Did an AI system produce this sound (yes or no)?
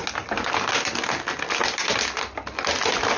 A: no